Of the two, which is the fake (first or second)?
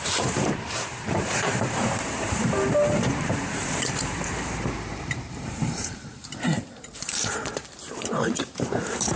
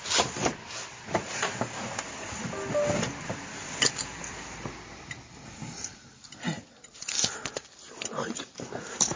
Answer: first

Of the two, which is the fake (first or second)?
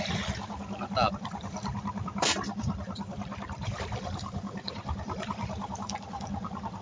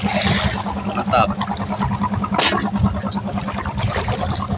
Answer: first